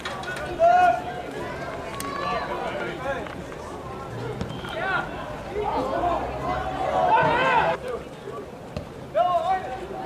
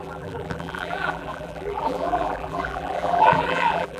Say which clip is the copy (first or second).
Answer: second